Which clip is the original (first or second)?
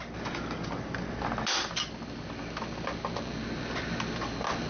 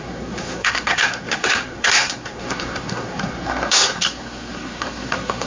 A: first